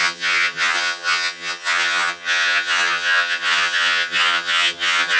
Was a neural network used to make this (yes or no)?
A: yes